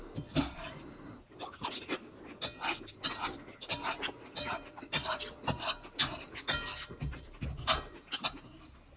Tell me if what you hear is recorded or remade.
recorded